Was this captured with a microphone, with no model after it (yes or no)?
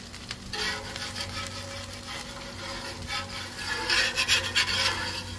yes